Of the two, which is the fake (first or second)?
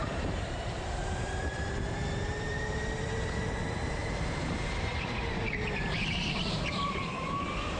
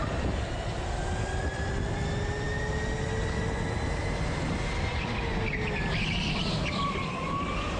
first